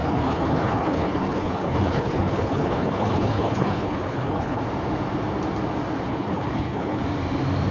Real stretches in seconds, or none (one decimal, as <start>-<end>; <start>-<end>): 4.6-6.1; 7.0-7.7